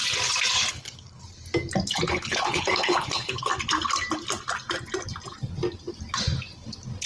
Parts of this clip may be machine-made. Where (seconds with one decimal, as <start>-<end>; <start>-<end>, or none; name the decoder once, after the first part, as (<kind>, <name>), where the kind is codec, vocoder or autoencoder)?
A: 0.7-1.2 (codec, HILCodec); 2.1-3.5